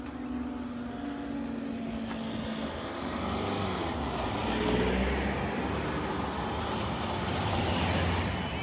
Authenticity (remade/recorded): recorded